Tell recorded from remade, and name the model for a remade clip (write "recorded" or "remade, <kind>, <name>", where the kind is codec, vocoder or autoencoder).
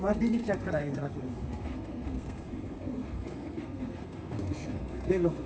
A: remade, codec, SNAC